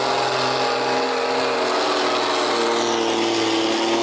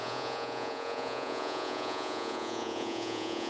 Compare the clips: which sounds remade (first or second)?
second